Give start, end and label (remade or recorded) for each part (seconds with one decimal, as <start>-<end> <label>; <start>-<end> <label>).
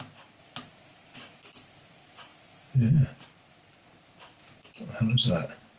0.0-5.8 recorded